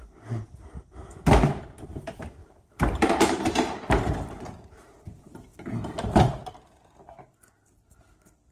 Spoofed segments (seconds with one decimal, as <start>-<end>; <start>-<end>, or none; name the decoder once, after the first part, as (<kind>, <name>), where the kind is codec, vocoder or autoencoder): 1.9-5.0 (vocoder, BigVGAN v2)